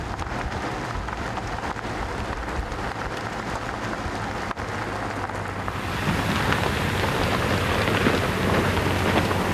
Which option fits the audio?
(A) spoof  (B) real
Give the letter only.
B